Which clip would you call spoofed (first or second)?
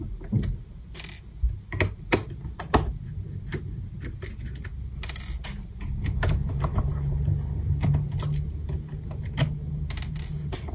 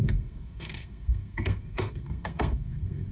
second